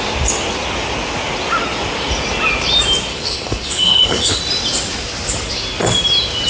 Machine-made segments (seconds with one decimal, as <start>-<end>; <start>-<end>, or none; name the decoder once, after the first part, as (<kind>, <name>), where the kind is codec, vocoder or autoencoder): 3.1-4.4 (codec, HILCodec)